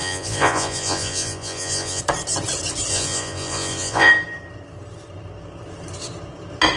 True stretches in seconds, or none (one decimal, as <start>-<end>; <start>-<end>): 2.0-2.9; 4.1-6.8

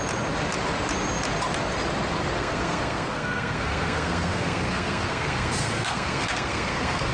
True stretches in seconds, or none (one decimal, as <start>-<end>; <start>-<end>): 0.0-2.4

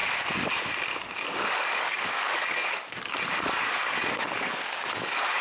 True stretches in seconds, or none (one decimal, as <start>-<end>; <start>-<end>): 0.0-1.0

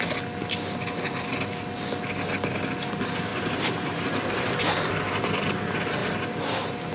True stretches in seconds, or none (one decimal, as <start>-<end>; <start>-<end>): 0.0-3.3; 4.9-6.9

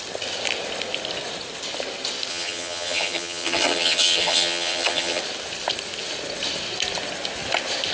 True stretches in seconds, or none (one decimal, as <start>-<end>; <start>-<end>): 0.0-2.3; 5.2-7.9

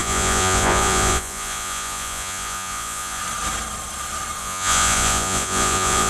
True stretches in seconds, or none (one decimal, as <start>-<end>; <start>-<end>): 3.2-4.4